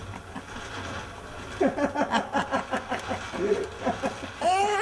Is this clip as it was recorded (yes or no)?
yes